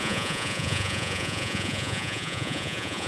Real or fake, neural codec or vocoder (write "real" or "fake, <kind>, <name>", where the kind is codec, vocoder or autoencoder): fake, vocoder, Vocos